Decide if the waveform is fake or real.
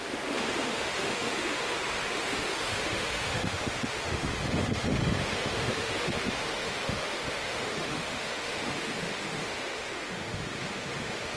fake